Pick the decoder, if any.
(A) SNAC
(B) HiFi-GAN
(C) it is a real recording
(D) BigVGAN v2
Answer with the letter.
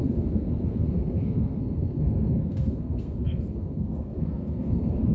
A